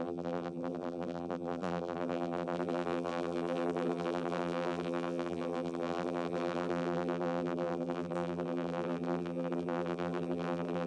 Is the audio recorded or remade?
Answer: remade